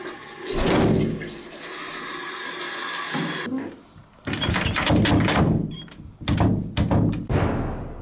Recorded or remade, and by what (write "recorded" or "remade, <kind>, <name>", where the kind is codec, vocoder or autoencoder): recorded